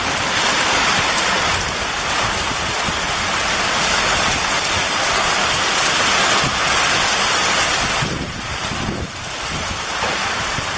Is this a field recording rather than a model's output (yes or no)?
yes